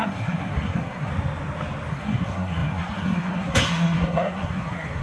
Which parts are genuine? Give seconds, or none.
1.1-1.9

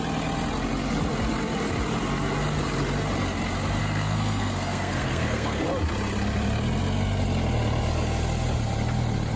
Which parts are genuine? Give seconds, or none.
0.0-3.8; 5.6-9.4

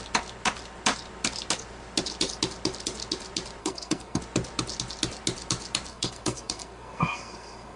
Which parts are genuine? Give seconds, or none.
0.0-3.6; 4.2-5.9

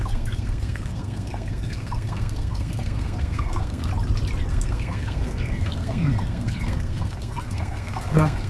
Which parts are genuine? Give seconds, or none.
3.9-4.5